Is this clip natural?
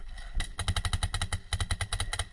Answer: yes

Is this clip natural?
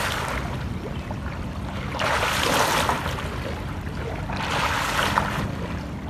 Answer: yes